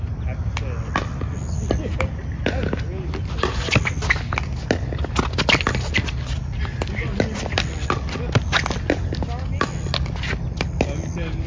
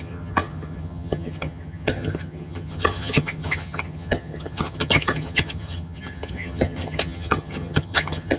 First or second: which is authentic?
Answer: first